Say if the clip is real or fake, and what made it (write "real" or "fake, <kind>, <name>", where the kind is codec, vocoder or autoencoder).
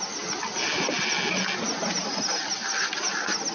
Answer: real